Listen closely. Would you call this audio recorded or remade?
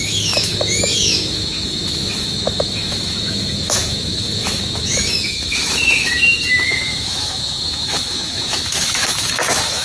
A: remade